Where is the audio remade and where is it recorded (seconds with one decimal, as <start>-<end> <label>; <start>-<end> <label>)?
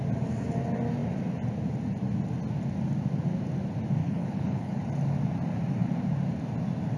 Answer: 0.0-4.0 recorded; 4.0-4.8 remade; 4.8-7.0 recorded